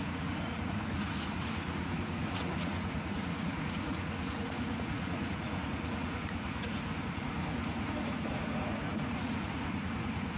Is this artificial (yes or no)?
yes